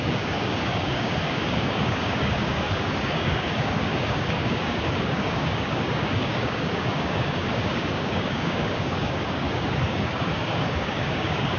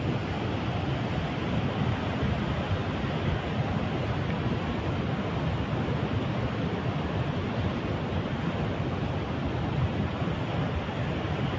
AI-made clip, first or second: first